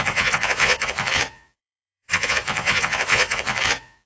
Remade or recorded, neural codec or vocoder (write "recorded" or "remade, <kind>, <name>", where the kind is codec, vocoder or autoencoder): remade, vocoder, Vocos